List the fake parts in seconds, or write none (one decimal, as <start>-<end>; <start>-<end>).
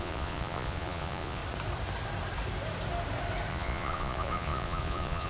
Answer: 0.0-1.4; 3.5-5.3